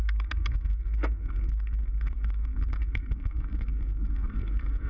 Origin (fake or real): fake